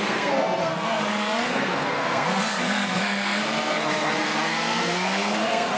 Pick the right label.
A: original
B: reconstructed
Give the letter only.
B